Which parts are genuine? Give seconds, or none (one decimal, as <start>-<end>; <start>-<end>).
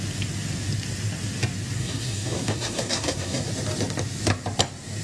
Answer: 0.0-1.8; 3.5-5.0